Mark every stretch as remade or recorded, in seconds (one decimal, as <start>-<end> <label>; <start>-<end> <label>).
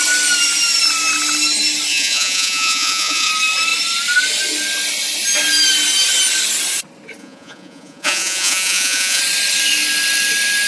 0.0-1.9 recorded; 1.9-3.3 remade; 3.3-7.2 recorded; 7.2-9.2 remade; 9.2-10.7 recorded